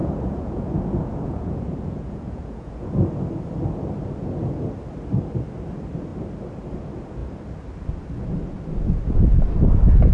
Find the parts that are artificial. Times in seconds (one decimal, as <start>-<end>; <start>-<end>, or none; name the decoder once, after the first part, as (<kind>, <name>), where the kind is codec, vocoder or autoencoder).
0.0-2.9 (vocoder, Vocos)